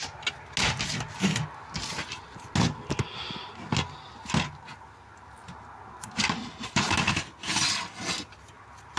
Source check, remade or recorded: recorded